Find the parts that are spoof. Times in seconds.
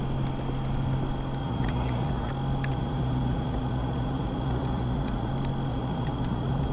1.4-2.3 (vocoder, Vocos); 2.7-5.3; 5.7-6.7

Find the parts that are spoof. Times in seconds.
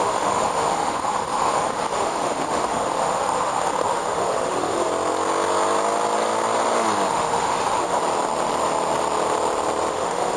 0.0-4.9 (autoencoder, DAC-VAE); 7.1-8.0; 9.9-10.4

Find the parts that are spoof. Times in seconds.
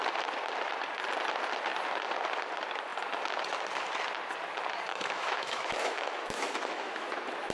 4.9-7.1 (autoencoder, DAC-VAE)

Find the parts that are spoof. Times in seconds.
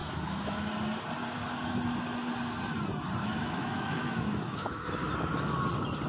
0.0-0.7 (autoencoder, DAC-VAE); 3.2-5.1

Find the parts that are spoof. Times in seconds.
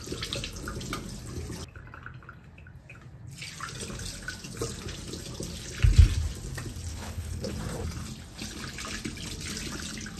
6.9-7.5 (codec, HILCodec)